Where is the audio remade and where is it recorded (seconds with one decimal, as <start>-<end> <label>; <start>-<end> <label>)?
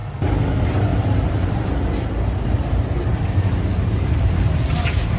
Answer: 0.0-0.9 recorded; 0.9-2.1 remade; 2.1-3.7 recorded; 3.7-5.2 remade